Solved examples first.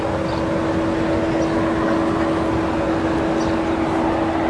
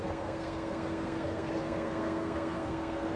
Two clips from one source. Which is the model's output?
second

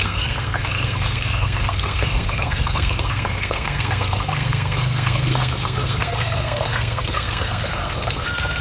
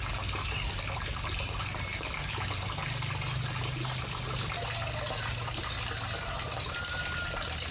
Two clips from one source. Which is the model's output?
first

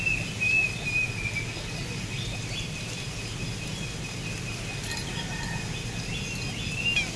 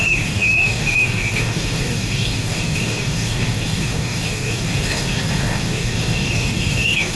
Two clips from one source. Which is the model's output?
second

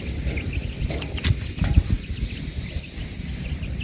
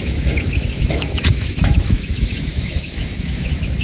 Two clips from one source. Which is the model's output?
second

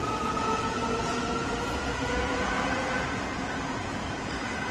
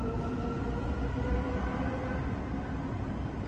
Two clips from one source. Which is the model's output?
first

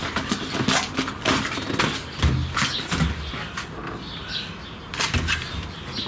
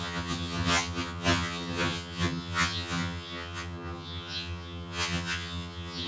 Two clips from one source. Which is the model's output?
second